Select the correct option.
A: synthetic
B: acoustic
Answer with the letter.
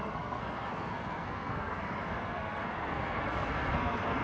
A